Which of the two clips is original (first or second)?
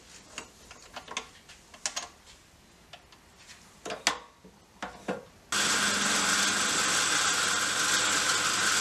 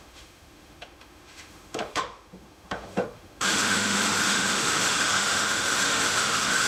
first